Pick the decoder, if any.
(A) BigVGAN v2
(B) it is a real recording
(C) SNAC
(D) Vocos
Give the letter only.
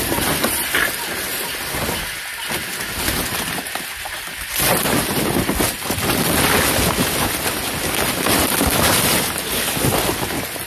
B